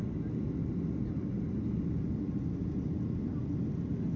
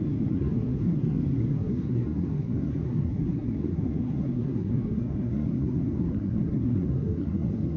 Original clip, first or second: first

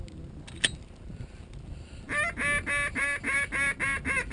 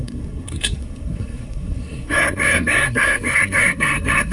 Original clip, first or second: first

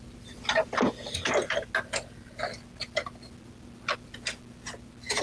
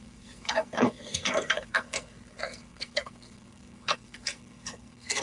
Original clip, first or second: first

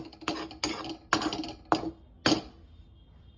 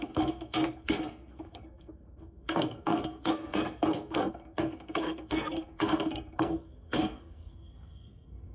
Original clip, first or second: first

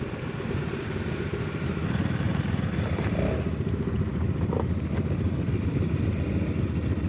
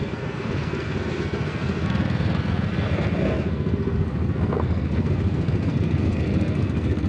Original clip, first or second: first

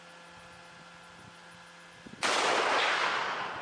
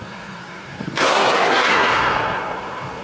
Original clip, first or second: first